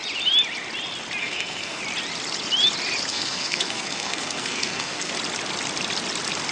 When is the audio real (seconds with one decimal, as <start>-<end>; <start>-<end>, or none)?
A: 0.0-1.2; 1.8-3.1; 5.1-6.5